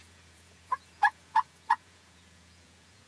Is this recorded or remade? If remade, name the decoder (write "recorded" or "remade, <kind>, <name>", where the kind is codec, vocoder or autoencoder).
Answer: remade, vocoder, Vocos